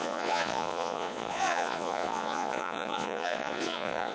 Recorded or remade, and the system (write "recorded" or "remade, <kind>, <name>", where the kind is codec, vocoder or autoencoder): remade, vocoder, Vocos